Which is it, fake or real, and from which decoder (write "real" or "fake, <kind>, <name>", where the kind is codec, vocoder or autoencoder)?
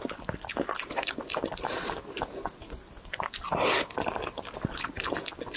real